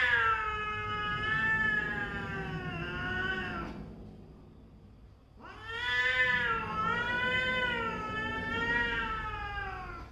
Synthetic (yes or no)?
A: no